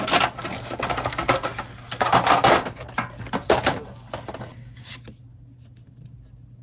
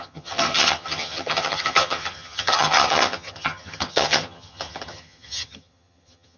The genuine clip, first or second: first